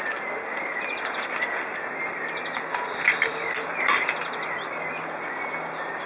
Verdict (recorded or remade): recorded